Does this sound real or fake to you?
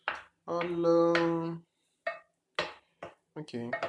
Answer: real